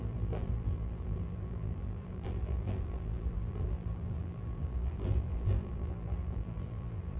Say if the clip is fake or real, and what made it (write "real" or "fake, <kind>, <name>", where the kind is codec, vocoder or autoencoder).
fake, vocoder, BigVGAN v2